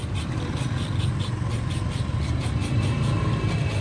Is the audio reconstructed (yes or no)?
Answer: no